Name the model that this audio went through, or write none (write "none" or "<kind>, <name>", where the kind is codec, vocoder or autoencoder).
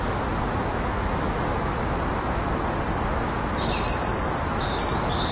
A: none